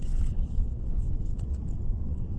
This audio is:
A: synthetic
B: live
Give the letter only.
A